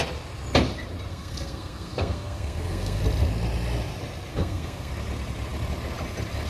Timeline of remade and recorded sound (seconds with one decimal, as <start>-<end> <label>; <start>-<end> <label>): 0.0-1.1 recorded; 1.1-3.0 remade; 3.0-4.3 recorded; 4.3-4.9 remade; 4.9-6.5 recorded

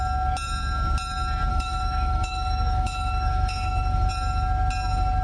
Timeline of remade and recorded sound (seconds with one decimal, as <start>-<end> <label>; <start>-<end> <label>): 0.0-1.5 recorded; 1.5-4.1 remade; 4.1-5.2 recorded

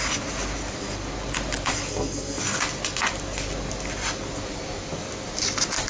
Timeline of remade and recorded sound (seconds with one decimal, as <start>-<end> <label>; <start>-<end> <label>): 0.0-1.9 recorded; 1.9-2.4 remade; 2.4-5.9 recorded

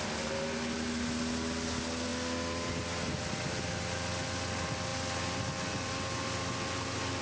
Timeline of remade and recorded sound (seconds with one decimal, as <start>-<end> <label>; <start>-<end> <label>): 0.0-7.2 recorded

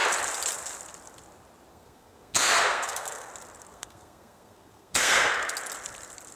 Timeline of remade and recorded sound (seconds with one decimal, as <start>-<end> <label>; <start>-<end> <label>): 0.0-1.7 recorded; 1.7-3.3 remade; 3.3-3.7 recorded; 3.7-5.5 remade; 5.5-6.4 recorded

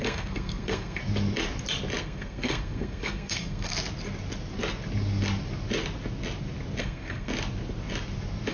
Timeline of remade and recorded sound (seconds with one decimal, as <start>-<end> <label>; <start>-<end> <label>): 0.0-1.0 remade; 1.0-2.0 recorded; 2.0-3.7 remade; 3.7-6.8 recorded; 6.8-7.3 remade; 7.3-8.5 recorded

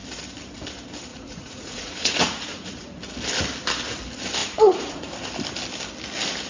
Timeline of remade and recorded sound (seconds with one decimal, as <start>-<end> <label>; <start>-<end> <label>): 0.0-1.1 recorded; 1.1-3.0 remade; 3.0-4.4 recorded; 4.4-5.1 remade; 5.1-6.5 recorded

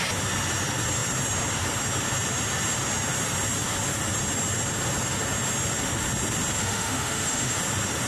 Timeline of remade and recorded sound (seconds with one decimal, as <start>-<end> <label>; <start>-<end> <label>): 0.0-6.6 recorded; 6.6-7.6 remade; 7.6-8.1 recorded